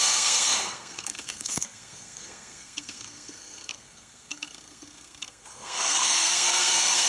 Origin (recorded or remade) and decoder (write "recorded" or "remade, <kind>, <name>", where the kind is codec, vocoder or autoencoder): remade, codec, SNAC